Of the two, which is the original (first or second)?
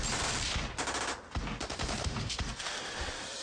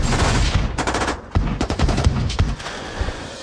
first